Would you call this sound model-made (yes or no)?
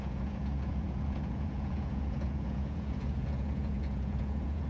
yes